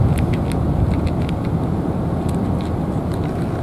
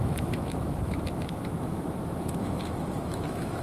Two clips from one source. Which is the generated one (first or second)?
second